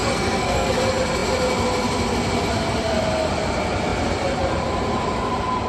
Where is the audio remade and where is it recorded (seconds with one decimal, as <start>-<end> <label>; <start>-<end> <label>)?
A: 0.0-0.7 remade; 0.7-5.7 recorded

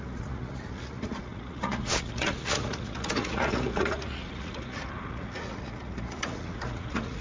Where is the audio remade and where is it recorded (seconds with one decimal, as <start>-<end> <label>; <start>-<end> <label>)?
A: 0.0-7.2 remade

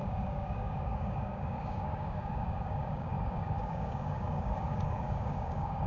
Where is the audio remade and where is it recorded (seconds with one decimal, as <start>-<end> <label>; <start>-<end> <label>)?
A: 0.0-5.9 remade

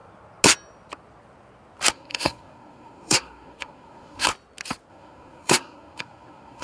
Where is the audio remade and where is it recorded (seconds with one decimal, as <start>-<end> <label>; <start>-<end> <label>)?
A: 0.0-1.9 recorded; 1.9-4.3 remade; 4.3-4.9 recorded; 4.9-6.6 remade

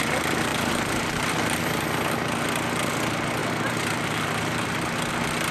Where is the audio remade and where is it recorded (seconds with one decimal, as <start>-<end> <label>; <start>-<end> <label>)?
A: 0.0-0.5 recorded; 0.5-1.7 remade; 1.7-3.4 recorded; 3.4-5.1 remade; 5.1-5.5 recorded

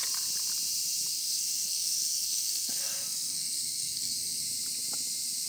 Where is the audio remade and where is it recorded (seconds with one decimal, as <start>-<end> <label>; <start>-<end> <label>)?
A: 0.0-1.1 recorded; 1.1-4.4 remade; 4.4-5.5 recorded

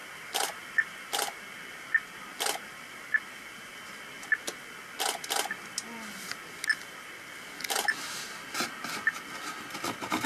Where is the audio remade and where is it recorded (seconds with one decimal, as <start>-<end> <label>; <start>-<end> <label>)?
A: 0.0-1.4 remade; 1.4-2.3 recorded; 2.3-3.9 remade; 3.9-10.3 recorded

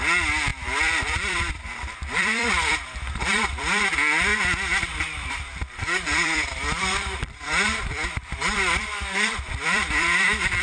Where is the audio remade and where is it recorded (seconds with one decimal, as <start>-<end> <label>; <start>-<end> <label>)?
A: 0.0-0.5 recorded; 0.5-3.9 remade; 3.9-6.1 recorded; 6.1-10.6 remade